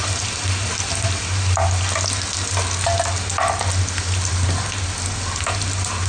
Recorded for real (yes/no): yes